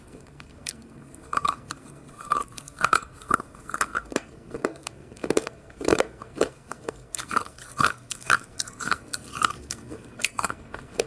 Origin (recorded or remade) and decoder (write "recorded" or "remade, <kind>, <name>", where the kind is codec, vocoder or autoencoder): remade, codec, SNAC